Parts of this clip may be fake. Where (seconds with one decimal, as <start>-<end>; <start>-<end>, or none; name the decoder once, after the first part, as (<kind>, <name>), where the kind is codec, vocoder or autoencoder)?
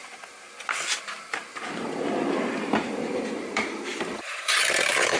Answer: 2.4-5.2 (vocoder, BigVGAN v2)